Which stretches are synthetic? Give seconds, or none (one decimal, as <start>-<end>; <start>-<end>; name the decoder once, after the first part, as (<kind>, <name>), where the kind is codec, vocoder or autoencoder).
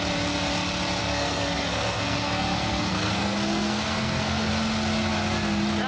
1.0-4.5 (codec, SNAC)